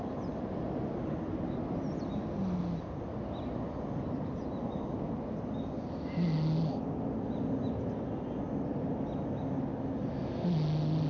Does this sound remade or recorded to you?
recorded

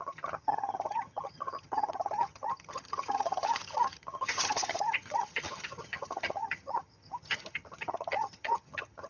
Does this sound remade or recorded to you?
remade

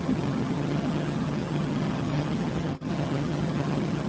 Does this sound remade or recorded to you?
remade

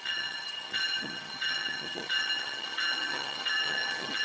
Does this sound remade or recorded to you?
remade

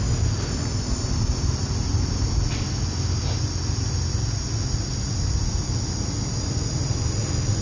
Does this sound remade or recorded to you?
recorded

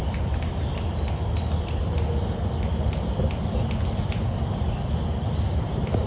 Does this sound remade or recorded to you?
recorded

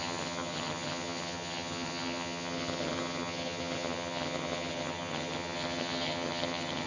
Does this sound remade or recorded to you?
remade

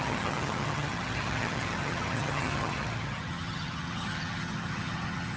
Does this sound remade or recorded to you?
remade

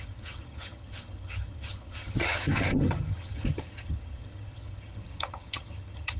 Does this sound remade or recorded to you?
remade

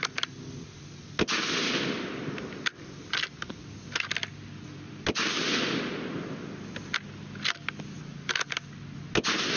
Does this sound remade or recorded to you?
recorded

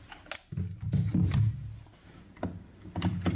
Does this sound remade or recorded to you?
recorded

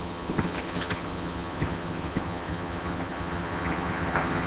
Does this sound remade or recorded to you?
remade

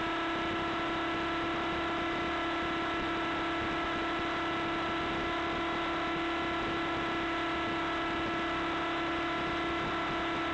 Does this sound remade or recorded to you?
recorded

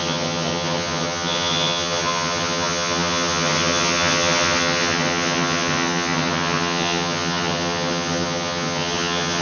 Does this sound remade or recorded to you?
remade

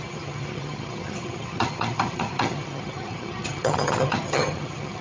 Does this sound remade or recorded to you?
remade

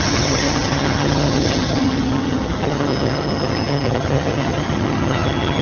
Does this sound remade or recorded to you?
remade